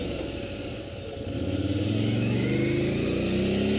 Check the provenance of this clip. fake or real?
real